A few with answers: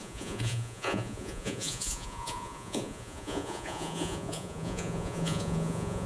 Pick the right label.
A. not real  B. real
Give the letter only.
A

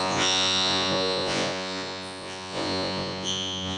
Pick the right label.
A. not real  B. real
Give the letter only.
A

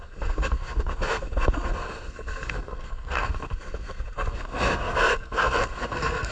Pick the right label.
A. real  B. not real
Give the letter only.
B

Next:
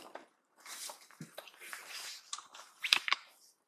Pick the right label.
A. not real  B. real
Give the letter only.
A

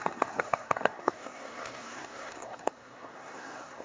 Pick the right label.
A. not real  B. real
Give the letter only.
A